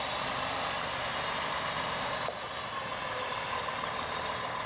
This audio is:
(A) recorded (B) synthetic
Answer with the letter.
A